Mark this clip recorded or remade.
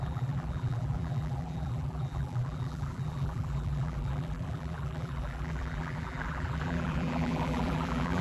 remade